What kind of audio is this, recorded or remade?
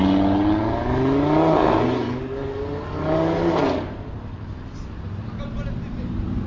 recorded